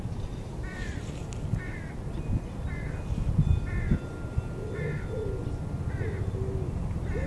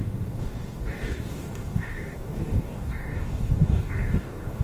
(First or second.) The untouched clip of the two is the first